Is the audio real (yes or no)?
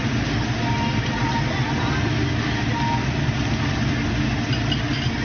yes